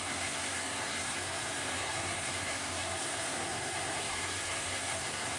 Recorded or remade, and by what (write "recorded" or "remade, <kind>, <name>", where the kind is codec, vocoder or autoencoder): remade, codec, SNAC